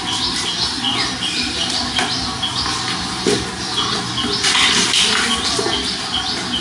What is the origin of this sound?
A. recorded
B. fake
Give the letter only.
A